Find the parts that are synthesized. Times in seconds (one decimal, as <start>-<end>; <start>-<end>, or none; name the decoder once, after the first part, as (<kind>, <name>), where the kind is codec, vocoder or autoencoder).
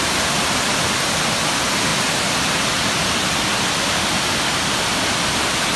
none